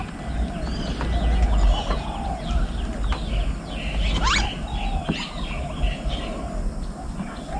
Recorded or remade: recorded